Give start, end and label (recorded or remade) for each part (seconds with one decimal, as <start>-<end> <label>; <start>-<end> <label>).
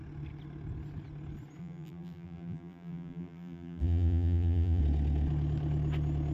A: 0.0-1.6 recorded; 1.6-4.8 remade; 4.8-6.3 recorded